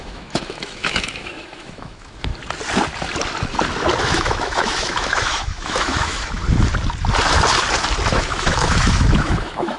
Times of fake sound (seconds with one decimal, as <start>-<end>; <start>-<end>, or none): 0.0-2.3; 4.0-6.4; 8.1-9.8